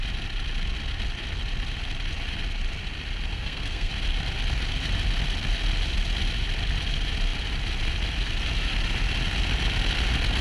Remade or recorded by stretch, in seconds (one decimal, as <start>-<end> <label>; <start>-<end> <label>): 0.0-3.3 recorded; 3.3-3.9 remade; 3.9-10.4 recorded